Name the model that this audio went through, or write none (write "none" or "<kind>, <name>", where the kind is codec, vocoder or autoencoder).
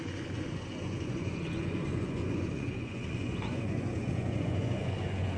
vocoder, Vocos